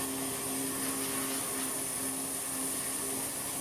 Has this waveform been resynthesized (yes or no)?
no